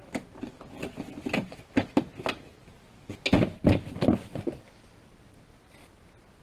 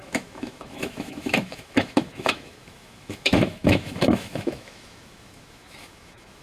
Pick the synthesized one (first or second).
second